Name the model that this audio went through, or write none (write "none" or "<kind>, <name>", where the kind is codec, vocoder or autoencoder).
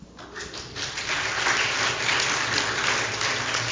none